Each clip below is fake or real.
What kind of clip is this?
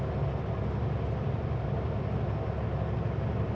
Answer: real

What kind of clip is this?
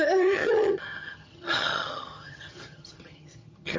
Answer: fake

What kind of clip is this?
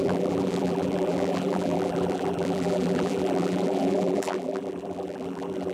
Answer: fake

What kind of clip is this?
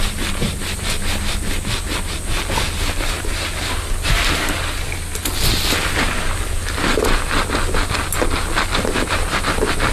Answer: real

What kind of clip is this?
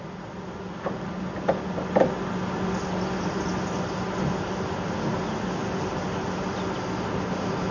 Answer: real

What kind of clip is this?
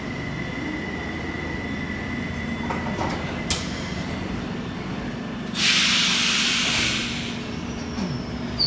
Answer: fake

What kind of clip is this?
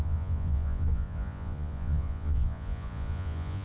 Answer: fake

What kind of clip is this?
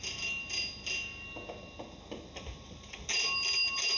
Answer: real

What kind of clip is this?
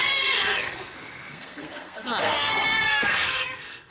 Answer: fake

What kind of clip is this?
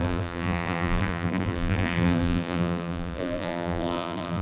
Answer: fake